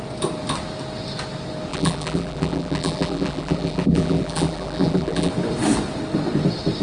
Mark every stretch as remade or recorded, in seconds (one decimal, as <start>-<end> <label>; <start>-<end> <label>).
0.0-1.7 recorded; 1.7-5.3 remade; 5.3-6.8 recorded